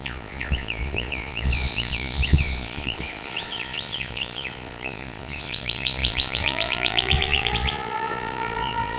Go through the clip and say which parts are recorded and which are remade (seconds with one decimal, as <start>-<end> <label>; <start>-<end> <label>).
0.0-9.0 remade